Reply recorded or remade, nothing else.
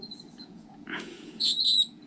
remade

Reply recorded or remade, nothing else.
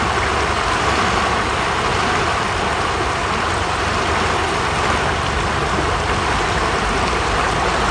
recorded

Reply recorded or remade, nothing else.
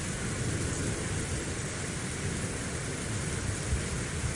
recorded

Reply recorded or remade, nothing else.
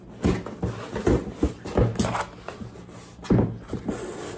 recorded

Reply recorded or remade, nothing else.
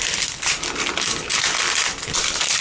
recorded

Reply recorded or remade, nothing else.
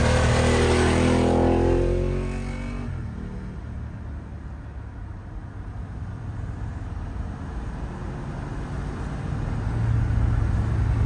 recorded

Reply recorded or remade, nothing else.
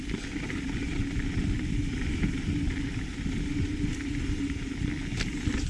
recorded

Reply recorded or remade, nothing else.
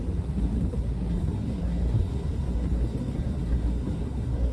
remade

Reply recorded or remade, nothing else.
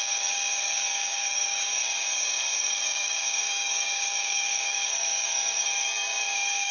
remade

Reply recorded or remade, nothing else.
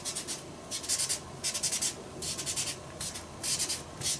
recorded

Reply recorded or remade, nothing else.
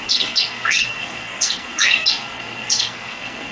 remade